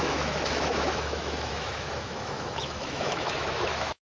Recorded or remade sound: remade